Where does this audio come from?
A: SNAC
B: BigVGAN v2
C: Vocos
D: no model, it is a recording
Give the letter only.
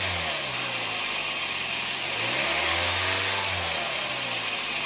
D